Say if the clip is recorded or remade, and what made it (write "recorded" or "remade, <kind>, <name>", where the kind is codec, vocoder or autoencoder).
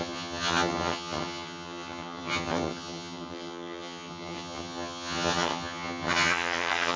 remade, vocoder, HiFi-GAN